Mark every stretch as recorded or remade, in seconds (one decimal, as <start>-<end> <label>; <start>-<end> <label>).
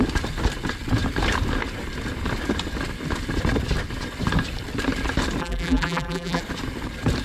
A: 0.0-5.4 recorded; 5.4-6.4 remade; 6.4-7.2 recorded